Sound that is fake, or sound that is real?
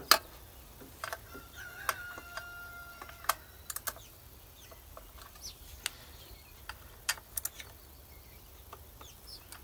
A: real